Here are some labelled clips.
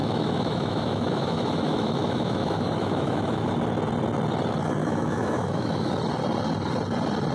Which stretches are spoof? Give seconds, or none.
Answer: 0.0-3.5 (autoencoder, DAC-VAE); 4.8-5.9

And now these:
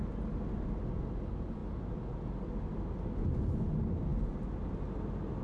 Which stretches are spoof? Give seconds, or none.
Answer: none